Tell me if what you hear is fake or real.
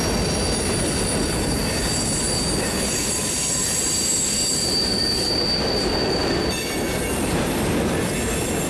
real